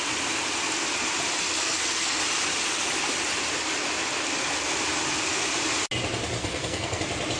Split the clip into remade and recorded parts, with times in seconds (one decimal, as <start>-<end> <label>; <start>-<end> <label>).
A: 0.0-1.6 recorded; 1.6-2.2 remade; 2.2-6.4 recorded; 6.4-7.0 remade; 7.0-7.4 recorded